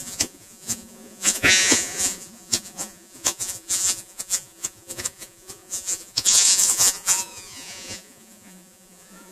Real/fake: fake